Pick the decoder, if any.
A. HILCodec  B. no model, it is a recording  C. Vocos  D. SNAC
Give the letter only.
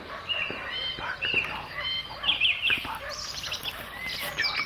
B